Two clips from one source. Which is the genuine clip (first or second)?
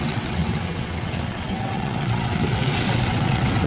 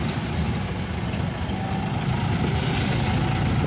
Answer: second